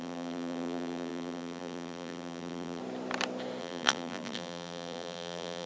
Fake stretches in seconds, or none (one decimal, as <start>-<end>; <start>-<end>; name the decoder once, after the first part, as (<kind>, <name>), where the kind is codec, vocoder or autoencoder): 0.0-2.8 (vocoder, BigVGAN v2); 3.6-5.7

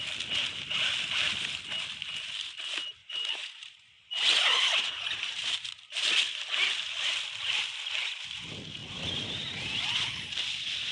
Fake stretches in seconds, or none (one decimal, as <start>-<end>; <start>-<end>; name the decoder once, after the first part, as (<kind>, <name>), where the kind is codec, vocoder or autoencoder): 3.0-5.2 (vocoder, BigVGAN v2); 8.8-9.8

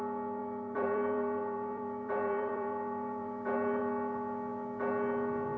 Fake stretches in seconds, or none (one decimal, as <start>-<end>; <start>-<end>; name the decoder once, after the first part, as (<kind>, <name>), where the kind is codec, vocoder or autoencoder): 0.4-3.8 (vocoder, BigVGAN v2)

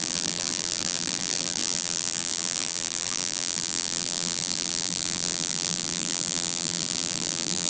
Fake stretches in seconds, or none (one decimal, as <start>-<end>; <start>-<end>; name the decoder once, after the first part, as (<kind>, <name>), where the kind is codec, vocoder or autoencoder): 0.0-7.7 (vocoder, BigVGAN v2)

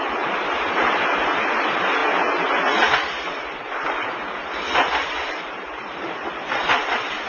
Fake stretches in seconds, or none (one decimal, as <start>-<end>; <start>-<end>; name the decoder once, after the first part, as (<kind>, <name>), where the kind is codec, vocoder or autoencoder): 0.0-2.0 (vocoder, BigVGAN v2); 4.9-7.3